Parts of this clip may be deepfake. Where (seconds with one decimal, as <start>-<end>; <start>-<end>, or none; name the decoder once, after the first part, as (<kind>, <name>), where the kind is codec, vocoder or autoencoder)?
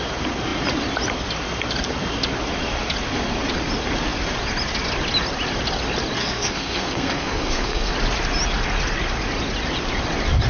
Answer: 6.2-7.9 (codec, SNAC)